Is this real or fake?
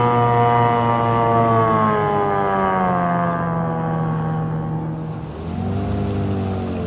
real